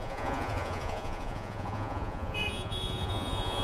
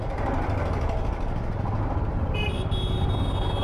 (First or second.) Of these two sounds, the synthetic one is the first